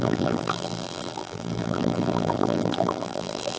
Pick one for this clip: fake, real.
fake